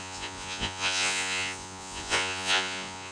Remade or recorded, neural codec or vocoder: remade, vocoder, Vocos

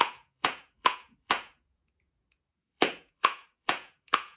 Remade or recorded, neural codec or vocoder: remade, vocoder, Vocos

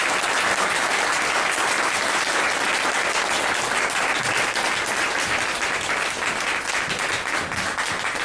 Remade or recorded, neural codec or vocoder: recorded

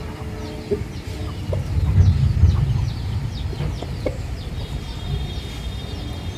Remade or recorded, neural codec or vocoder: recorded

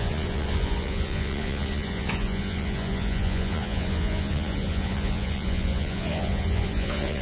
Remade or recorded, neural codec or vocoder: remade, vocoder, Vocos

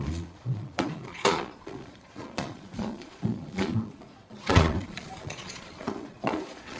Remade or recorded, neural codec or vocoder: remade, vocoder, Vocos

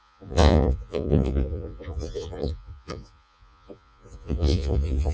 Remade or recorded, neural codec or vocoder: remade, vocoder, Vocos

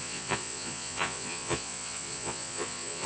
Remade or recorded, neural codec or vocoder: remade, vocoder, Vocos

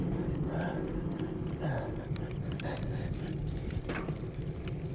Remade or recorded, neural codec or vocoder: recorded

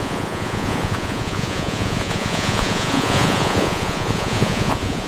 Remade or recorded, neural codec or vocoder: remade, vocoder, Vocos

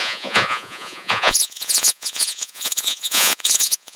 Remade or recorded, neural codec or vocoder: remade, vocoder, Vocos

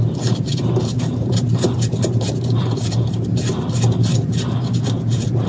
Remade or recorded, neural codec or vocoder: recorded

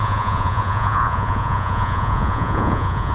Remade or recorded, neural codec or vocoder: remade, vocoder, Vocos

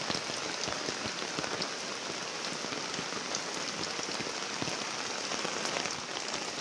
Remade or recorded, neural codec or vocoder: recorded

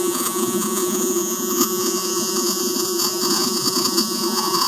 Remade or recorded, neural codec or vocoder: remade, vocoder, Vocos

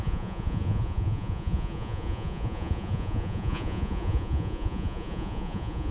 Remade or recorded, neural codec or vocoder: remade, vocoder, Vocos